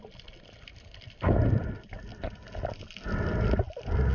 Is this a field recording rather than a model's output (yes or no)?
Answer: yes